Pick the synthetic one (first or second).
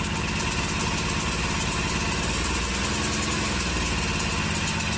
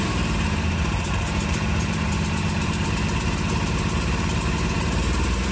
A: second